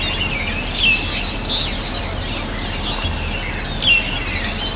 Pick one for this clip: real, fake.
real